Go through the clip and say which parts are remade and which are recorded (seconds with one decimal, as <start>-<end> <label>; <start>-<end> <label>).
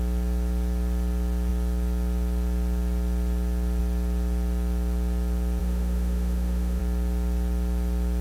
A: 0.0-5.6 recorded; 5.6-6.8 remade; 6.8-8.2 recorded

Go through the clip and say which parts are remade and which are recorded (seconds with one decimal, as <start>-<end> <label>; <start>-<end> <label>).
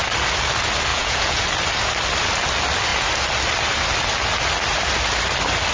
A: 0.0-0.9 recorded; 0.9-1.4 remade; 1.4-5.7 recorded